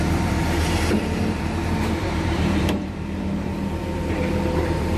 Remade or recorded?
remade